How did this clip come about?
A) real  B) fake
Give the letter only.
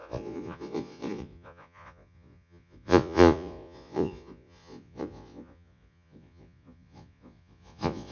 B